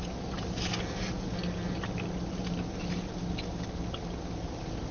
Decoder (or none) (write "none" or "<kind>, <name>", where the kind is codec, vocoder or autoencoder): none